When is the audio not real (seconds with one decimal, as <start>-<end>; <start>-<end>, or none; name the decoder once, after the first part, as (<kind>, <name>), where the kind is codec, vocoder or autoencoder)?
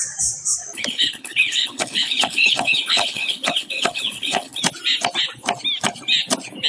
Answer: 0.6-4.6 (codec, HILCodec)